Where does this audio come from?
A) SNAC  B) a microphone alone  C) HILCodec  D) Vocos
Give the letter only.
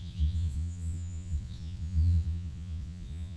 D